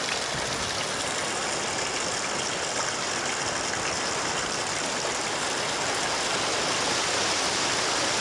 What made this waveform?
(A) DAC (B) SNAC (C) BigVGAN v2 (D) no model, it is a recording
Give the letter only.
D